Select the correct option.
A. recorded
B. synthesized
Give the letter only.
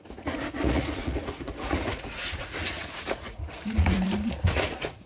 B